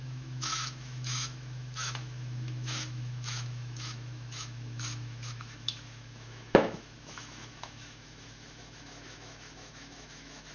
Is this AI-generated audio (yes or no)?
yes